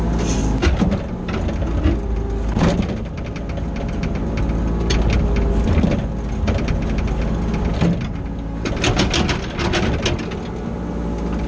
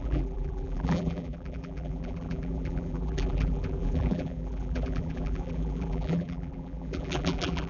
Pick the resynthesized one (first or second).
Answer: second